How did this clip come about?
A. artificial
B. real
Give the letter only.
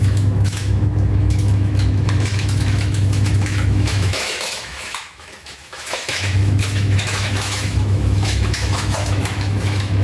A